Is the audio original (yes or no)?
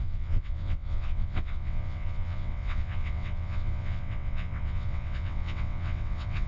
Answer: no